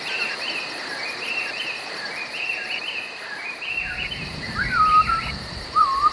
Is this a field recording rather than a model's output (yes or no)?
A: no